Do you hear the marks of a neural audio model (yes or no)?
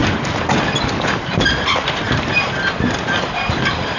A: no